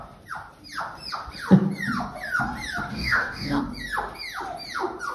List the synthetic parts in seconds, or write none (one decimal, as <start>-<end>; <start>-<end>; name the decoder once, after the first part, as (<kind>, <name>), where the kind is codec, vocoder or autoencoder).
2.9-3.6 (codec, DAC)